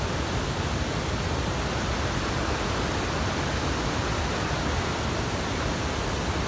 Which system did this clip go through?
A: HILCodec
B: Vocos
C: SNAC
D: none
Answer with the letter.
D